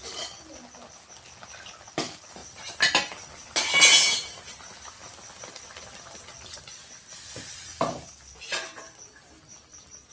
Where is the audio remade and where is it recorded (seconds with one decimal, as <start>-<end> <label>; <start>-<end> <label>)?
0.0-10.1 recorded